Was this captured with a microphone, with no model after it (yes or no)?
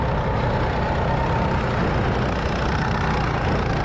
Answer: yes